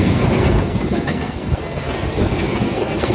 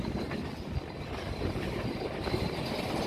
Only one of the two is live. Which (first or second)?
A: second